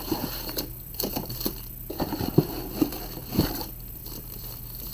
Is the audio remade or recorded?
remade